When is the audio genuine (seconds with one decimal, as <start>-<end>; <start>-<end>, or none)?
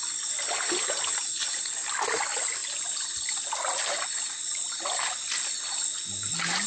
0.0-6.7